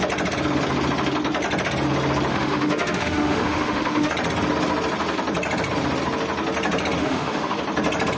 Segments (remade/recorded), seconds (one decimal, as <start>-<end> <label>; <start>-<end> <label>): 0.0-2.3 recorded; 2.3-4.1 remade; 4.1-7.0 recorded; 7.0-7.6 remade; 7.6-8.2 recorded